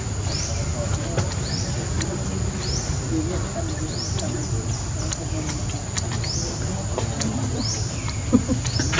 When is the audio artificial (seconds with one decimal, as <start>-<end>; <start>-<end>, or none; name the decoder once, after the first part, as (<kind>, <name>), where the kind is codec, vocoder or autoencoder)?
none